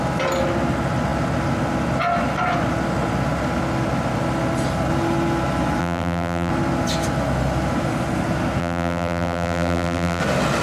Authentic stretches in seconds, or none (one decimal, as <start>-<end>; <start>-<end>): 0.0-5.8; 6.5-8.6; 10.2-10.6